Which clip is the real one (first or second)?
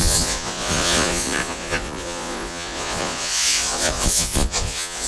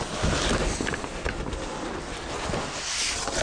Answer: second